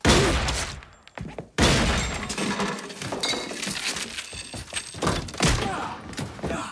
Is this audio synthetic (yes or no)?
no